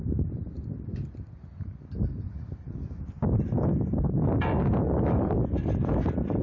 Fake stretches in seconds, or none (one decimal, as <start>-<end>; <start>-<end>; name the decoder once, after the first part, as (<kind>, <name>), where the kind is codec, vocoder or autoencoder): none

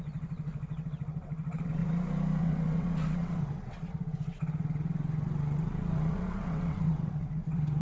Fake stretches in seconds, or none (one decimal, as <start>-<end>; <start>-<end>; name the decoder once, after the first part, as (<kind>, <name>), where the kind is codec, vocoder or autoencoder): 0.0-1.8 (vocoder, WaveNeXt); 2.4-7.8